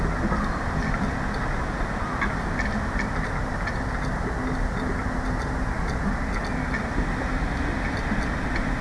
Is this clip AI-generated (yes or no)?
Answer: no